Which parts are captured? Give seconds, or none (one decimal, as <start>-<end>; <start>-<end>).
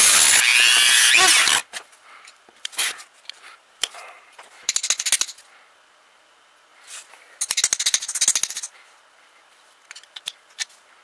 0.0-1.6; 4.7-11.0